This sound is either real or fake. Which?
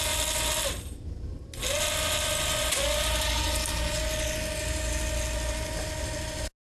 real